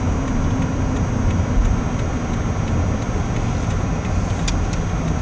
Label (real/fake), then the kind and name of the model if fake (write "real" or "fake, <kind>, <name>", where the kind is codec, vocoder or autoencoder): real